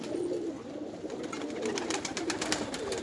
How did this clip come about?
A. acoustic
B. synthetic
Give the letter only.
A